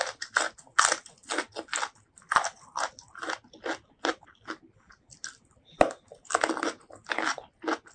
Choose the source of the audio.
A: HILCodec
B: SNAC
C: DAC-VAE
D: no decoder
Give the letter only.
D